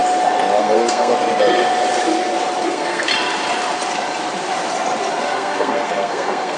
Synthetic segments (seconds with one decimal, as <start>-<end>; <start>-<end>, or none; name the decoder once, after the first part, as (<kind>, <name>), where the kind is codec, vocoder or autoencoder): 0.6-1.1 (codec, SNAC); 2.7-3.1; 5.2-6.6